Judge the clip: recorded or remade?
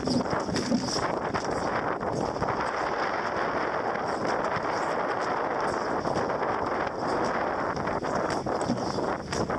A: recorded